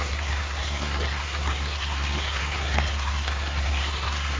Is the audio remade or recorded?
remade